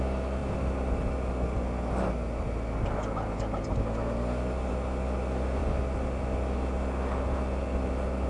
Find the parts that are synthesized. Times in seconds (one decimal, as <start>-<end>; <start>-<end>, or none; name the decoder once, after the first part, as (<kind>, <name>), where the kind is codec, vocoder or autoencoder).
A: none